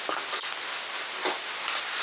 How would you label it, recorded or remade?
recorded